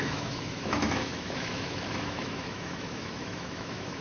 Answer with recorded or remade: remade